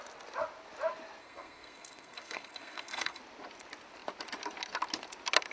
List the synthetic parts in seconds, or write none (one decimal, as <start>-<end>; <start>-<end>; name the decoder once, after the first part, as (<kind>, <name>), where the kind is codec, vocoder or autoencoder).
1.2-3.2 (codec, SNAC)